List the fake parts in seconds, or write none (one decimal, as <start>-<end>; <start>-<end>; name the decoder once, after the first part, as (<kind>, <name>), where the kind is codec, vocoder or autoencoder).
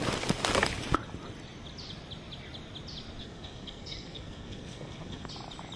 3.2-5.3 (codec, SNAC)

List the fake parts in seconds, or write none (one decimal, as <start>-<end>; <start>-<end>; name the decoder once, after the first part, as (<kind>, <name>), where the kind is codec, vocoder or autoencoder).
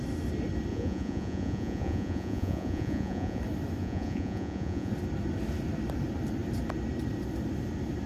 0.7-3.4 (vocoder, Vocos); 3.8-4.9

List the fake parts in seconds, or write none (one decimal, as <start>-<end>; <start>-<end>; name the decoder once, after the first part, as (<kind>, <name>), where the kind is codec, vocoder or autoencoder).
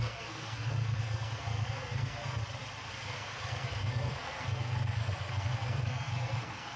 0.0-2.4 (codec, SNAC); 2.9-6.8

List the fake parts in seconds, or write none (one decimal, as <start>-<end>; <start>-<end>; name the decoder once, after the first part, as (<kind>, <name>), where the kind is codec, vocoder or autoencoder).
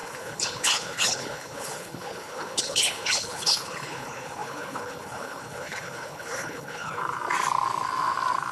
0.0-7.0 (codec, HILCodec)